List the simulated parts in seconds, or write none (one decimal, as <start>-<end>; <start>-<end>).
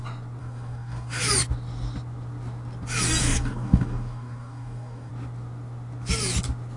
0.4-1.2; 3.2-5.1